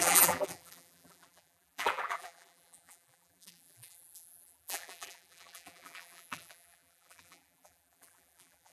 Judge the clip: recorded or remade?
remade